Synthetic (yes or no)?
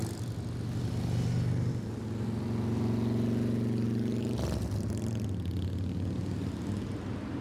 no